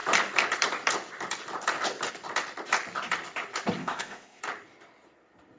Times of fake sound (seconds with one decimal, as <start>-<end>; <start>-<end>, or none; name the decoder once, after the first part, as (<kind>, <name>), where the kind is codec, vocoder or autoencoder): 3.8-4.4 (codec, ZipCodec)

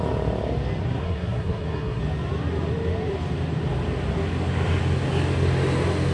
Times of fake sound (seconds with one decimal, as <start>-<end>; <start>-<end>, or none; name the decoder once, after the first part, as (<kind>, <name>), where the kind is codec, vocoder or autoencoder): 1.0-2.0 (codec, SNAC)

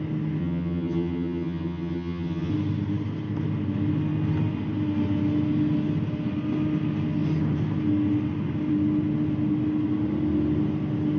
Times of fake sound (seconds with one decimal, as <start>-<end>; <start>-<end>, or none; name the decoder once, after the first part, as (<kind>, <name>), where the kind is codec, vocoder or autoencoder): 0.4-2.5 (vocoder, HiFi-GAN)

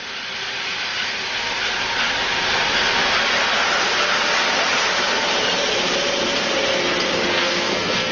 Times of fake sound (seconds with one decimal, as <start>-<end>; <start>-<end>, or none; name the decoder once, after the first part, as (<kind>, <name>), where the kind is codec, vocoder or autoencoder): 7.3-8.1 (codec, SNAC)

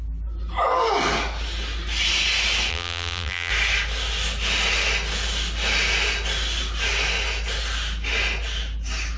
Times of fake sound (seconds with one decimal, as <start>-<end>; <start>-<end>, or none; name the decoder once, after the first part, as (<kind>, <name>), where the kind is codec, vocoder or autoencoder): 2.7-3.5 (vocoder, BigVGAN v2)

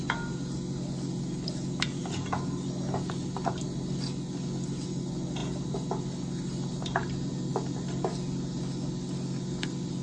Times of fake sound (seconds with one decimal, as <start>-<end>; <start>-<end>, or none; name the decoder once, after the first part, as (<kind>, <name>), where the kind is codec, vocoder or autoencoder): none